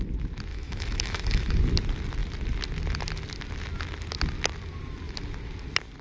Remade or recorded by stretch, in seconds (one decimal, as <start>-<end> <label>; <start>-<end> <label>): 0.0-0.5 recorded; 0.5-1.6 remade; 1.6-6.0 recorded